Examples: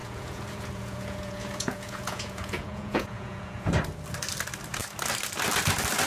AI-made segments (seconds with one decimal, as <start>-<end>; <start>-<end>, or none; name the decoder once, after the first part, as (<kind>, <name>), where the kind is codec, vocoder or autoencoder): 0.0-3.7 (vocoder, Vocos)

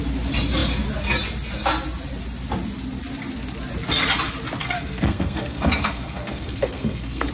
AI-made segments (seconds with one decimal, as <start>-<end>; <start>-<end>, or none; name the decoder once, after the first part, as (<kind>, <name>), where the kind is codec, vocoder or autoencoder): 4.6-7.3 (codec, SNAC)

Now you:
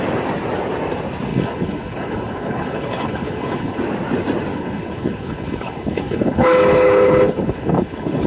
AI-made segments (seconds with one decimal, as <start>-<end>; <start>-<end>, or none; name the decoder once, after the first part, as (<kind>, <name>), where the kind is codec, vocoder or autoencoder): 1.3-3.8 (codec, HILCodec); 4.5-8.3

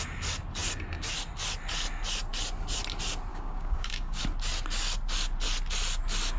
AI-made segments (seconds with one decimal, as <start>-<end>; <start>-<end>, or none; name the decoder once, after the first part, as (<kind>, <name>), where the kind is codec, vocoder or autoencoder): 3.3-4.2 (codec, DAC)

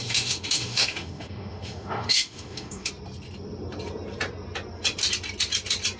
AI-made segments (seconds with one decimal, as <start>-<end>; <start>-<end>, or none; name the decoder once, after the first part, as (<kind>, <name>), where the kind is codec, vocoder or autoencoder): 0.0-2.9 (autoencoder, DAC-VAE)